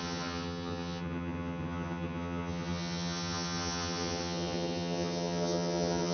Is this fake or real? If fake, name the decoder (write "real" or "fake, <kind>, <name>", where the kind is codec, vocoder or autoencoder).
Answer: fake, vocoder, HiFi-GAN